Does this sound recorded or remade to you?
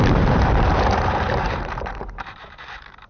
remade